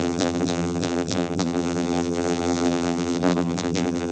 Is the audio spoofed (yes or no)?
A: yes